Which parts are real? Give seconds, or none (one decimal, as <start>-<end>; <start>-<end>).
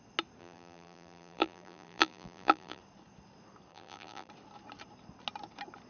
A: 0.0-0.4; 2.8-3.7; 4.3-5.9